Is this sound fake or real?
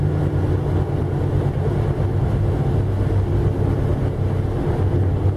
real